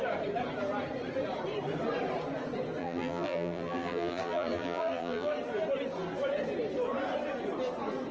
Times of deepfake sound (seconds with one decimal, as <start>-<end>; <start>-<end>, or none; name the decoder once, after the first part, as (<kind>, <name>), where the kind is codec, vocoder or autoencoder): 2.8-5.3 (vocoder, BigVGAN v2)